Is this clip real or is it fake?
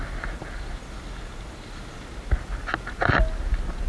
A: real